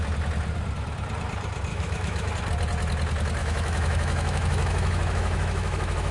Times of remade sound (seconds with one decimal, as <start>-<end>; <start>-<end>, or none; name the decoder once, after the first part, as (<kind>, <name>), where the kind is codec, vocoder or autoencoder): 1.7-2.3 (autoencoder, DAC-VAE); 3.4-6.1